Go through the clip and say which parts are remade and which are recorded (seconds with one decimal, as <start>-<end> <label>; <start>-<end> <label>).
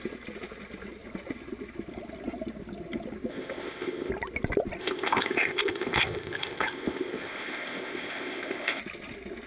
0.0-3.3 recorded; 3.3-4.1 remade; 4.1-4.8 recorded; 4.8-8.8 remade; 8.8-9.5 recorded